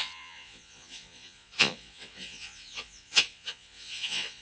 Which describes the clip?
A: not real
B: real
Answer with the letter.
A